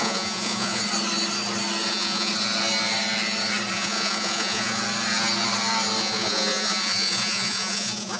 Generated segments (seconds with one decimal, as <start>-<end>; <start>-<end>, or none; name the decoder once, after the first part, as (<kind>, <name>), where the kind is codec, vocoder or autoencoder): 0.0-0.8 (vocoder, Vocos); 1.9-2.3; 3.7-4.8; 6.0-8.2